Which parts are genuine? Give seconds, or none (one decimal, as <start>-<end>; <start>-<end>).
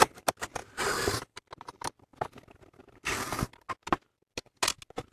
0.0-5.1